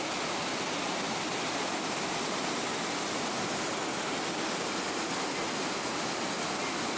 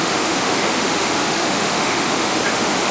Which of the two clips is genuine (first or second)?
first